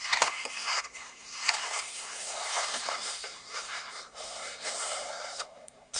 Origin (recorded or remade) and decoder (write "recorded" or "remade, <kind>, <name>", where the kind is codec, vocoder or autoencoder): remade, codec, SNAC